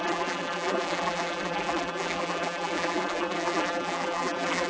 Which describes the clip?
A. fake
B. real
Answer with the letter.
A